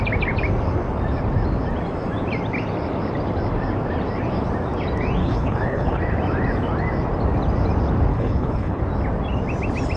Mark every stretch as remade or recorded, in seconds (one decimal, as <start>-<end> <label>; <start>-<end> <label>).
0.0-5.2 recorded; 5.2-6.0 remade; 6.0-8.1 recorded; 8.1-8.8 remade; 8.8-10.0 recorded